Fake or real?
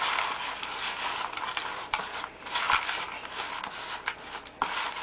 real